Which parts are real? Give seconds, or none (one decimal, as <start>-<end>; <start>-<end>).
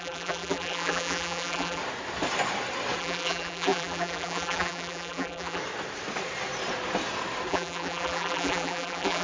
1.8-3.0; 5.6-7.5